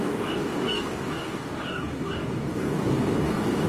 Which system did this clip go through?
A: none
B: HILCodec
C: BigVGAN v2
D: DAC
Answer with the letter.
D